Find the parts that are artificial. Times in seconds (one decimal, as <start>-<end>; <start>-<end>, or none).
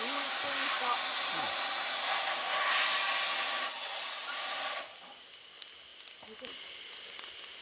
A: none